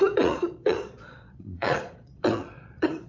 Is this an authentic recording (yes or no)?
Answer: no